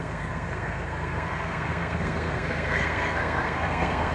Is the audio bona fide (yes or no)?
no